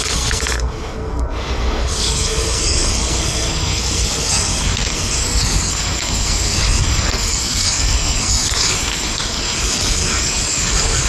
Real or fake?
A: fake